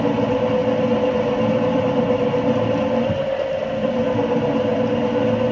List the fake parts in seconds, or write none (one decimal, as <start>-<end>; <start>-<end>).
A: none